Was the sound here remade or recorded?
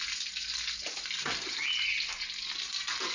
recorded